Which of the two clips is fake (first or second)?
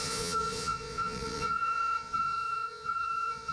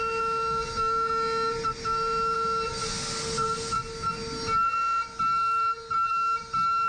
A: first